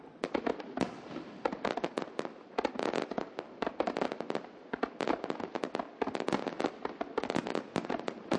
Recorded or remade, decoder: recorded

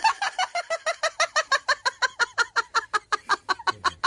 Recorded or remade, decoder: recorded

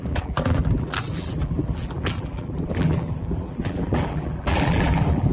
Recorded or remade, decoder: remade, vocoder, BigVGAN v2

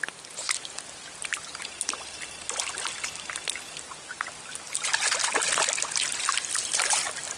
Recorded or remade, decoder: recorded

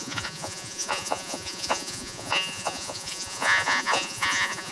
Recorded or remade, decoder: remade, vocoder, Vocos